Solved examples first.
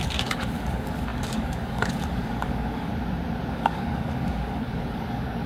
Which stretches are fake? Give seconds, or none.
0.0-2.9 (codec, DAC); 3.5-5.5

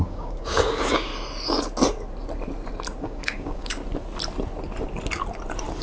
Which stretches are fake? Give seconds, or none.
0.0-1.1 (codec, DAC); 3.0-3.8

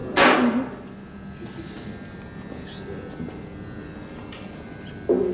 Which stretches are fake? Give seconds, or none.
none

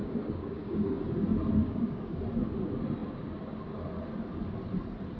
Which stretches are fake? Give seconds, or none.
0.0-1.0 (codec, DAC); 1.6-2.2

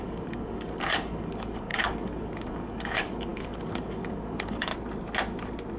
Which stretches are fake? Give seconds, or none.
0.0-4.7 (codec, DAC)

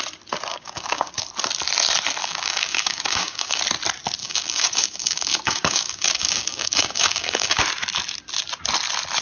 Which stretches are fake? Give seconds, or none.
0.5-1.1 (codec, DAC); 2.2-3.6; 4.2-7.6

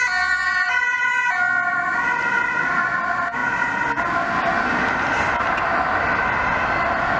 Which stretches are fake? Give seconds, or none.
none